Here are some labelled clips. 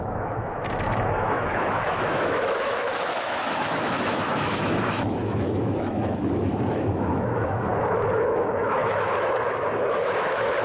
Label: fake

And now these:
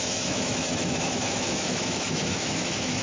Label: fake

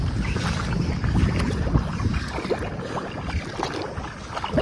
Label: real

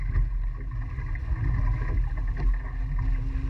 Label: real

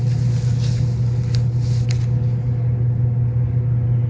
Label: real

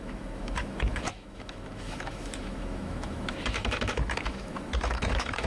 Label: fake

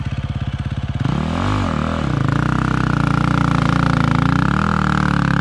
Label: real